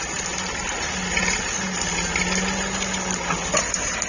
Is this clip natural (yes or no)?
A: yes